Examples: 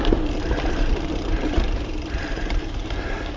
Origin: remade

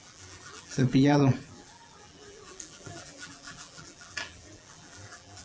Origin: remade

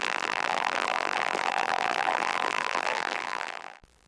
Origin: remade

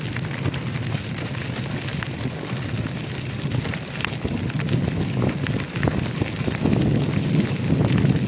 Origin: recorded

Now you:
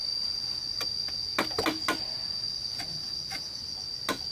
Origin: recorded